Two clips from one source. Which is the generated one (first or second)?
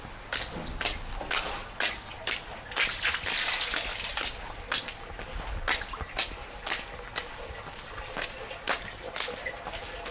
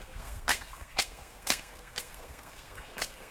second